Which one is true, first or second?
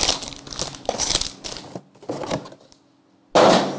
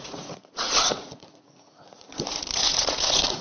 first